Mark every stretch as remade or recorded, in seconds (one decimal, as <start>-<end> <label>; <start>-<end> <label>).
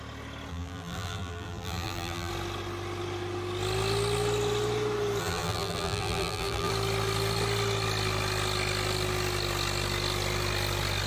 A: 0.0-0.5 recorded; 0.5-2.3 remade; 2.3-5.2 recorded; 5.2-6.7 remade; 6.7-11.1 recorded